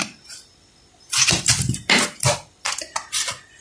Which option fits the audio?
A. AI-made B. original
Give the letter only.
B